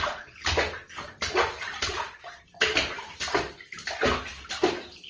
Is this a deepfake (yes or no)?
yes